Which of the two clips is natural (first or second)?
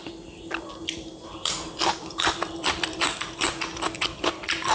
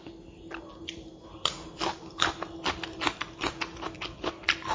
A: second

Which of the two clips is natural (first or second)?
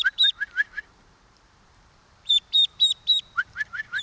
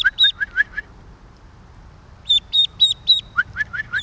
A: second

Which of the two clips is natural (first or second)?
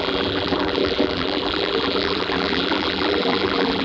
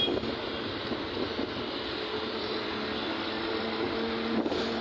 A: second